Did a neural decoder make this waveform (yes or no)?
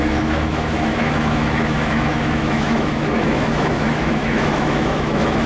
yes